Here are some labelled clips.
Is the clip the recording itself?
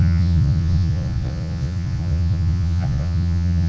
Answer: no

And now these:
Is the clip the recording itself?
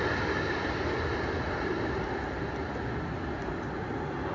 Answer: yes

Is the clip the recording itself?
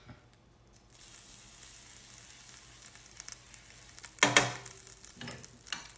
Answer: yes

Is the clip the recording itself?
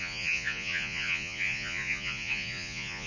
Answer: no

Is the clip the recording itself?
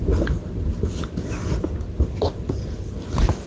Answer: yes